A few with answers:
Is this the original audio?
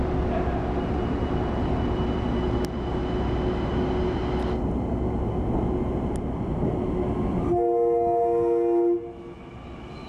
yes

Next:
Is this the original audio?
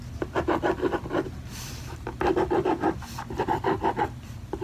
yes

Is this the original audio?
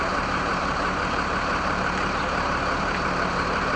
no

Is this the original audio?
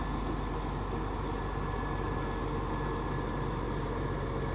yes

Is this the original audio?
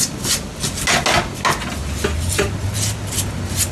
yes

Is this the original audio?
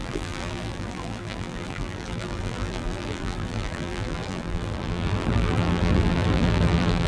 no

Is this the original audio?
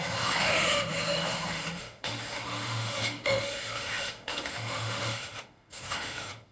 no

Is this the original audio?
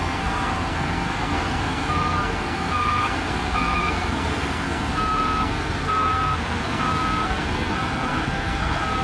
no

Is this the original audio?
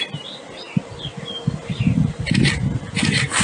yes